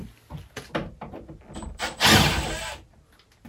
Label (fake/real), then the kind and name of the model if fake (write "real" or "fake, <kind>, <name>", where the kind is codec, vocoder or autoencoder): real